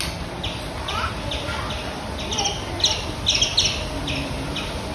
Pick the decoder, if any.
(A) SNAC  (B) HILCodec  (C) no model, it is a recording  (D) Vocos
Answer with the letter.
C